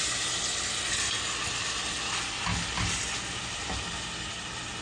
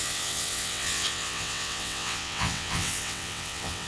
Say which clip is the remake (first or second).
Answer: second